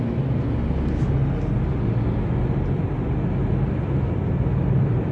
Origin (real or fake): real